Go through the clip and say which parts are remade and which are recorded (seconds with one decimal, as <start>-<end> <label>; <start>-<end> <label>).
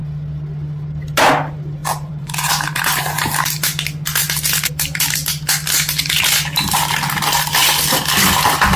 0.0-1.8 recorded; 1.8-3.0 remade; 3.0-8.8 recorded